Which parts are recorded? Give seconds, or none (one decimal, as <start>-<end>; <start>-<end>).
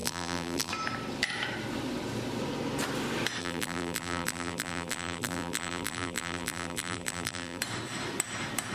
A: 0.7-3.4; 7.6-8.7